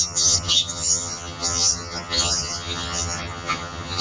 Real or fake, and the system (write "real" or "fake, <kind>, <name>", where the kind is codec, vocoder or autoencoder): fake, vocoder, HiFi-GAN